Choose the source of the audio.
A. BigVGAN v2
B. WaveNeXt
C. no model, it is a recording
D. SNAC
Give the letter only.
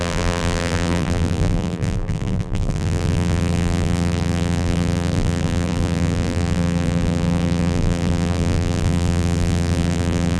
A